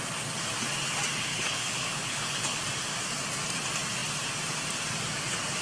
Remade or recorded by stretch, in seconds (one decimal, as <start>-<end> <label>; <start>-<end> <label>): 0.0-1.3 recorded; 1.3-2.6 remade; 2.6-5.6 recorded